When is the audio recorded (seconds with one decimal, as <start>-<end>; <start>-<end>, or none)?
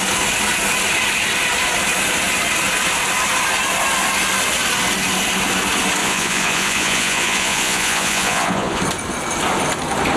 0.0-6.0; 8.8-10.2